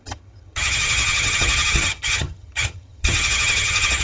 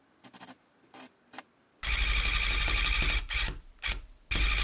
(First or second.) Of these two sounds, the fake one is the first